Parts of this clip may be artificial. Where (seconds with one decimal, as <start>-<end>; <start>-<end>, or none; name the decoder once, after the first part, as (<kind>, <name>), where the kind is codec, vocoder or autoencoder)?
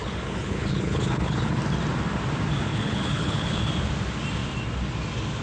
0.0-1.6 (codec, HILCodec); 2.7-3.6